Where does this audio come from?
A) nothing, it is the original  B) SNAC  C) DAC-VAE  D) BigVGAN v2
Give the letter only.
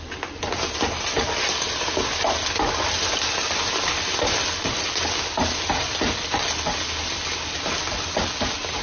A